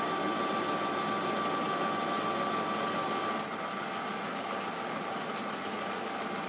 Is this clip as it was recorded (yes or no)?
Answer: yes